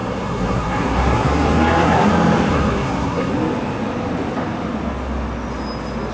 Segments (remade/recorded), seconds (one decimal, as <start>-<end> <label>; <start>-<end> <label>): 0.0-2.1 remade; 2.1-2.5 recorded; 2.5-3.3 remade; 3.3-6.1 recorded